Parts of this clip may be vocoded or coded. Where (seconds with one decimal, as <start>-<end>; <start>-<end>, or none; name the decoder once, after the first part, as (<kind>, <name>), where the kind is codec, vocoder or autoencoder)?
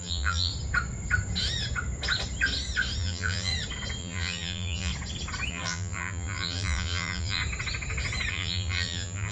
0.0-0.5 (vocoder, BigVGAN v2); 3.0-3.5; 4.0-4.9; 5.5-7.4; 8.3-9.3